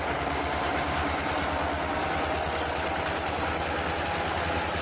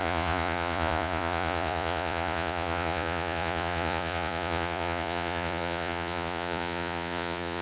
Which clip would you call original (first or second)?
first